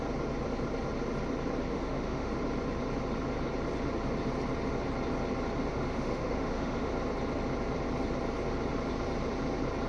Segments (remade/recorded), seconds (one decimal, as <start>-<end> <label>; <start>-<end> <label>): 0.0-1.7 recorded; 1.7-2.3 remade; 2.3-5.7 recorded; 5.7-6.9 remade; 6.9-9.9 recorded